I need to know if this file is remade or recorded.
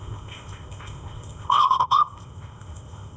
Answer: remade